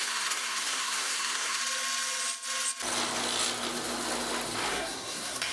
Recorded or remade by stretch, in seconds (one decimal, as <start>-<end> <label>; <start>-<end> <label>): 0.0-1.6 remade; 1.6-4.7 recorded; 4.7-5.5 remade